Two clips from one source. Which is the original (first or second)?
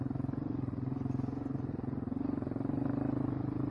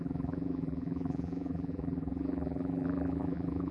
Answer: first